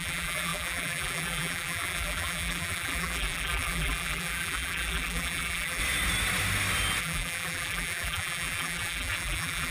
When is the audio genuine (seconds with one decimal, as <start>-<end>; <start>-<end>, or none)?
5.8-7.0